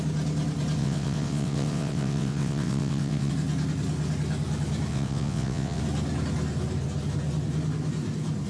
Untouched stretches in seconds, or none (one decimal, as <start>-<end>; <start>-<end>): 0.0-0.8; 3.3-4.9; 5.8-8.5